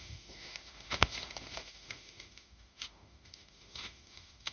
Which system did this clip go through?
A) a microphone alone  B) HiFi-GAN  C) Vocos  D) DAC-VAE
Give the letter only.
D